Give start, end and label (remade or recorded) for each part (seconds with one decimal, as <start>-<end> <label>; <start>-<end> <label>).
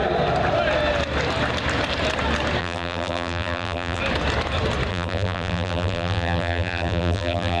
0.0-2.6 recorded; 2.6-4.0 remade; 4.0-4.9 recorded; 4.9-7.6 remade